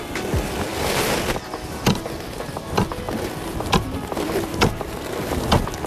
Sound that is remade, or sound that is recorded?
recorded